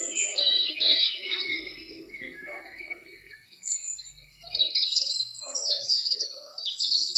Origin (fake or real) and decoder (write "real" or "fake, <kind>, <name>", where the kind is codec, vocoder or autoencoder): fake, codec, SNAC